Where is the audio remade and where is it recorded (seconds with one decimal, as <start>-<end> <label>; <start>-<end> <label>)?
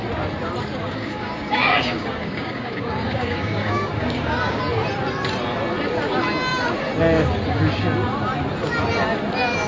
0.0-0.8 recorded; 0.8-4.6 remade; 4.6-9.7 recorded